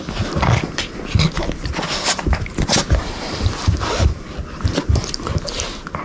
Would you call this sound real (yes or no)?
yes